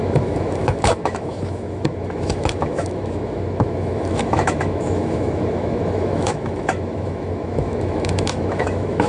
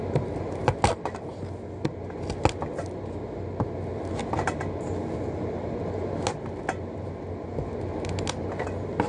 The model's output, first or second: first